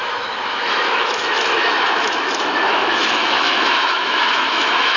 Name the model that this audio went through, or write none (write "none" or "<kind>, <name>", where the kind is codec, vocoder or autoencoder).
autoencoder, DAC-VAE